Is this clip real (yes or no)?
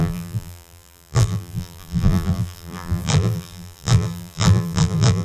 no